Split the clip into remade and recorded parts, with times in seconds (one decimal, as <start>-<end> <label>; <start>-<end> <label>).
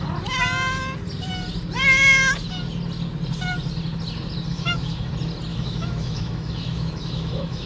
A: 0.0-4.5 recorded; 4.5-5.1 remade; 5.1-5.5 recorded; 5.5-7.7 remade